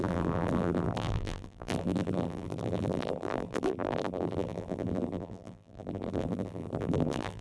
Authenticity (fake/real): fake